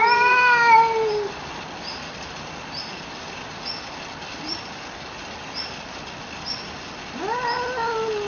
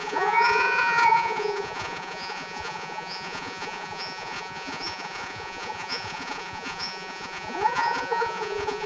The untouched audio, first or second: first